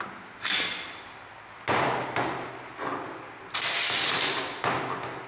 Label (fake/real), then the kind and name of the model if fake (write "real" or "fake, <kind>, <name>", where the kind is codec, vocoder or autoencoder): real